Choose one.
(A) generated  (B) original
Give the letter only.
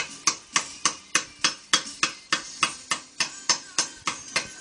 B